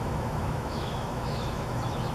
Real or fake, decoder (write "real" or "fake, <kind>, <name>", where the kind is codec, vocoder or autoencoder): fake, autoencoder, DAC-VAE